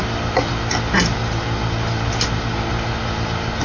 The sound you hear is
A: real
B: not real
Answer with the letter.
A